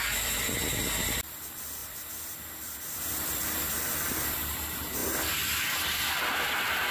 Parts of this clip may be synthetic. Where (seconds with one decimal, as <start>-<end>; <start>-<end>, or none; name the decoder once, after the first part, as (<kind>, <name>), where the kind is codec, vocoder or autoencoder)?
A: 0.0-6.9 (vocoder, BigVGAN v2)